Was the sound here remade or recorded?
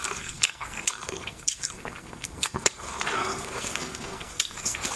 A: remade